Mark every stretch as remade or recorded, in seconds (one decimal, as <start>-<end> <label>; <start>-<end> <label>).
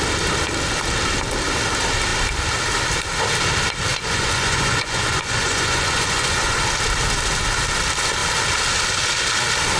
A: 0.0-3.9 recorded; 3.9-6.6 remade; 6.6-9.8 recorded